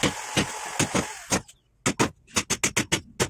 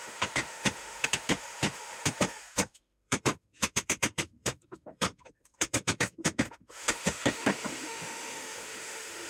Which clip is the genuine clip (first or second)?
first